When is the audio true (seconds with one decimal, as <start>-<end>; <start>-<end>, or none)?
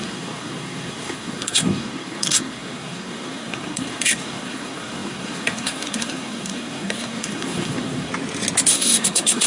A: 8.1-8.7